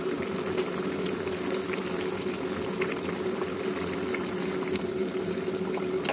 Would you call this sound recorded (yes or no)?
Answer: yes